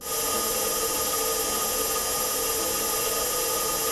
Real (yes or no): yes